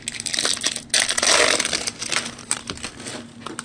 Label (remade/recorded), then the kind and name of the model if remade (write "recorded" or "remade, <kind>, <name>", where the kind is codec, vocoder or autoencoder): recorded